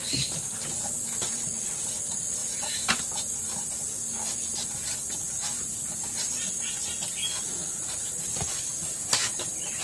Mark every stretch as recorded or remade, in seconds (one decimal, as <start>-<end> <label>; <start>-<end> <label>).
0.0-2.4 recorded; 2.4-3.0 remade; 3.0-9.8 recorded